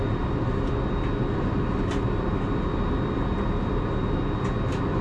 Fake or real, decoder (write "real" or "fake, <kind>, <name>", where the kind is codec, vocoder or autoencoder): real